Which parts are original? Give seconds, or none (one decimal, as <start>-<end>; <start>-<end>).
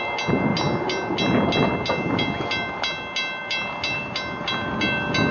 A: 0.0-5.3